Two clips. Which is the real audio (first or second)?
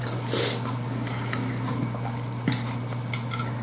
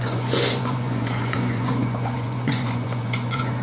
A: first